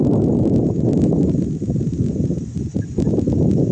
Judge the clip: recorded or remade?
recorded